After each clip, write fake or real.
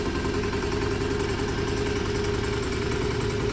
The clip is real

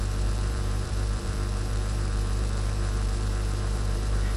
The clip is fake